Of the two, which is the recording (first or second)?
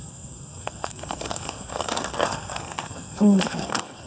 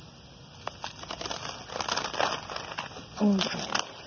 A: second